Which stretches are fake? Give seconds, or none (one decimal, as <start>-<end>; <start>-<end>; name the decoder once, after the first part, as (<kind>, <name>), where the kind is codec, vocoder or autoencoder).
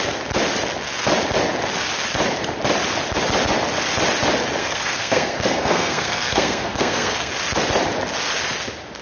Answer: 4.6-7.3 (codec, SNAC)